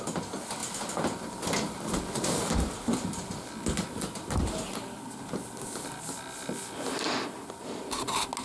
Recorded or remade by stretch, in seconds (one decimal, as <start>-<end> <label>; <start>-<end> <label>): 0.0-8.4 recorded